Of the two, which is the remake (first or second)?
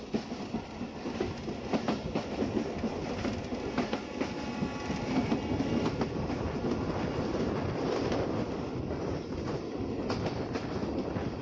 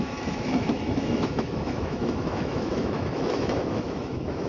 second